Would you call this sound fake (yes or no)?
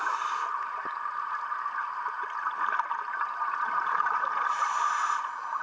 no